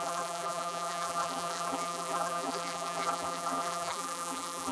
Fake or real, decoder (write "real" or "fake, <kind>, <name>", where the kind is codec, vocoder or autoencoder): fake, vocoder, BigVGAN v2